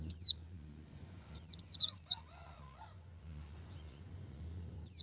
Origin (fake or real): fake